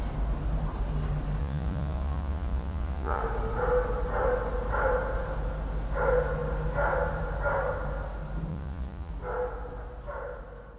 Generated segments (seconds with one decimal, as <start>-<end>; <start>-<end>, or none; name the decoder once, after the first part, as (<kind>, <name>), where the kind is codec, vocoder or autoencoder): 1.4-3.2 (vocoder, Vocos); 8.5-9.1